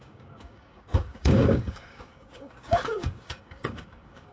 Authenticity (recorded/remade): remade